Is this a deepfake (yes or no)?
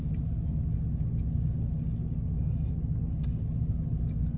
no